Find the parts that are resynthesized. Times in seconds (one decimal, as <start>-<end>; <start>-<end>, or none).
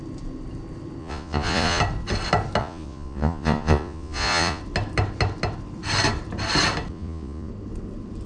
1.0-1.8; 2.6-4.6; 6.9-7.5